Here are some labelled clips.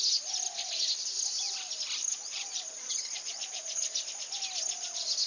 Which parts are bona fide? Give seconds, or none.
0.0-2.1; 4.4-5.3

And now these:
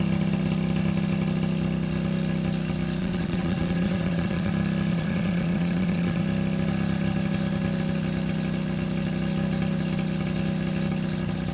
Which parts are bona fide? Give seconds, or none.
0.0-3.0; 4.5-4.9; 6.2-11.5

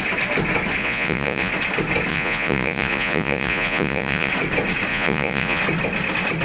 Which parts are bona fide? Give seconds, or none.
0.0-0.8; 1.5-2.1; 4.3-4.9; 5.6-6.4

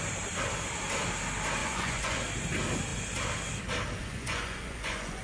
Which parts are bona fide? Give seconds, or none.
0.0-1.6; 2.2-4.0

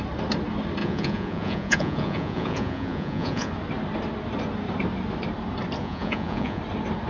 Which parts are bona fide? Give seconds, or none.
0.0-0.8; 3.5-5.8; 6.6-7.1